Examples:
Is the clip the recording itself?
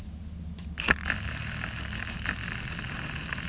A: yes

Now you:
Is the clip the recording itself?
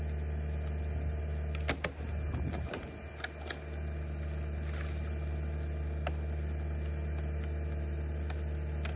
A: yes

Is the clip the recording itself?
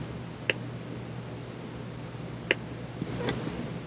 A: yes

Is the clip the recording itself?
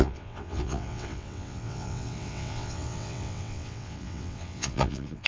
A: no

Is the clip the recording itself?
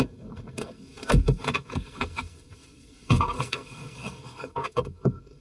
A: no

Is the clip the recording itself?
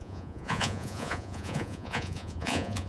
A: no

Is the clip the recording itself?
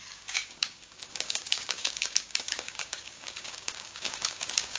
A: no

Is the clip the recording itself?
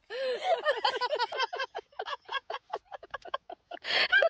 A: yes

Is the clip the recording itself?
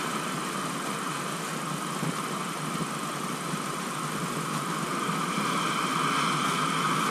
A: yes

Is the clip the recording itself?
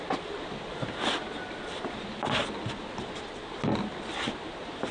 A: yes